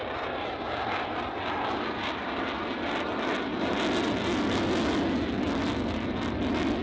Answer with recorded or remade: recorded